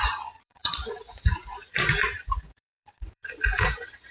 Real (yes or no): no